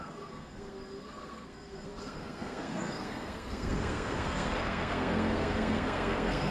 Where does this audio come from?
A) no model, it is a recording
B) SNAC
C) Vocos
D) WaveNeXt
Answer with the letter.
B